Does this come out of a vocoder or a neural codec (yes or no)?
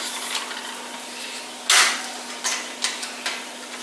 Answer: no